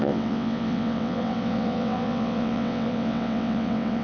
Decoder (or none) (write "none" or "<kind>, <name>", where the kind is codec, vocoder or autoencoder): vocoder, WaveNeXt